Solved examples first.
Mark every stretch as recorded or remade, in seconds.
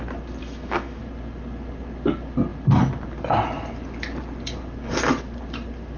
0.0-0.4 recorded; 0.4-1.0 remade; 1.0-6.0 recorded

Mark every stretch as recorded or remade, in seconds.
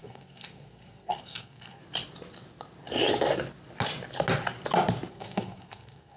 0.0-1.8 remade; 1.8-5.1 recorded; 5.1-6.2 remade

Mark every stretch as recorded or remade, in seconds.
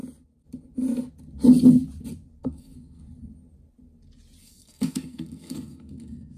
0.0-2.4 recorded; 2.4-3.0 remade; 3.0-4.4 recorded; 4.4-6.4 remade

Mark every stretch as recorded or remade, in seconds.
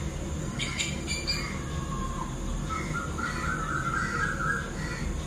0.0-0.4 recorded; 0.4-1.1 remade; 1.1-5.3 recorded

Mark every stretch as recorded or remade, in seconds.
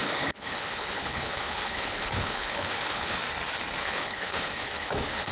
0.0-3.2 remade; 3.2-3.8 recorded; 3.8-5.3 remade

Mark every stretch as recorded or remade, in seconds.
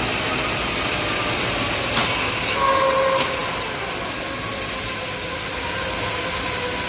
0.0-6.9 recorded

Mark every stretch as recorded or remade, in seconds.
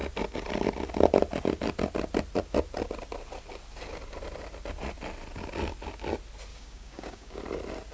0.0-6.5 recorded; 6.5-7.4 remade; 7.4-7.9 recorded